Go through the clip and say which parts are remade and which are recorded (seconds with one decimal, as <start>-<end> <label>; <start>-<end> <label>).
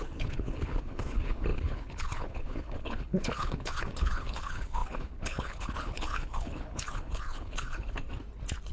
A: 0.0-8.0 remade; 8.0-8.7 recorded